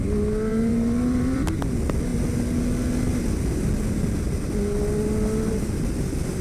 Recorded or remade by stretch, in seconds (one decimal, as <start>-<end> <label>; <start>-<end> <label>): 0.0-0.5 recorded; 0.5-1.6 remade; 1.6-6.4 recorded